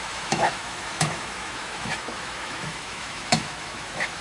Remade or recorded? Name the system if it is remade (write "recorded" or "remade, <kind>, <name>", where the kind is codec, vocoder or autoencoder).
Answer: remade, autoencoder, DAC-VAE